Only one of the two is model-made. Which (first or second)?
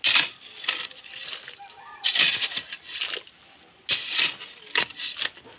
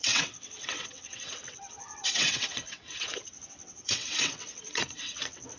second